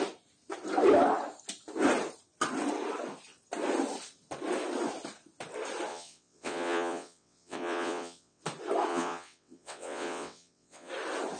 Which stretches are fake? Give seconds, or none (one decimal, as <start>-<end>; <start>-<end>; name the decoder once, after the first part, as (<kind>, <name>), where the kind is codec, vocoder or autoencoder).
5.9-8.4 (vocoder, WaveNeXt); 8.9-10.9